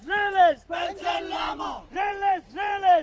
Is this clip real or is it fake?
fake